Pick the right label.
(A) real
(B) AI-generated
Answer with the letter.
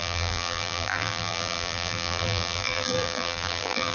B